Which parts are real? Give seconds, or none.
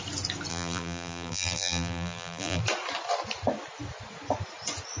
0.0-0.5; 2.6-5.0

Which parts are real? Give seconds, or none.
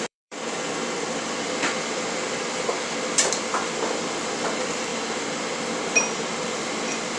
4.9-5.6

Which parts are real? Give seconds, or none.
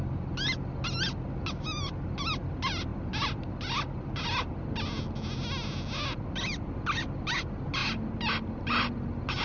0.0-9.4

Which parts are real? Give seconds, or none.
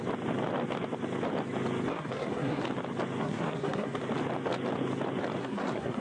0.0-1.9; 2.6-3.2; 4.0-5.4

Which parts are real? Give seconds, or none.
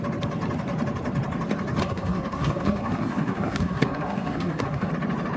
0.0-1.8; 4.9-5.4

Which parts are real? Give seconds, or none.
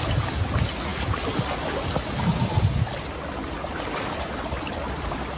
0.0-5.4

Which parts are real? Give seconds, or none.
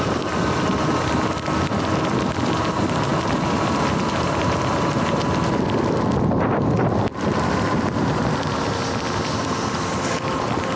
0.0-10.8